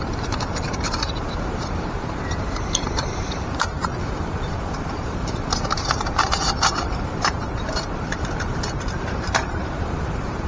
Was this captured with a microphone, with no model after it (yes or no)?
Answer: no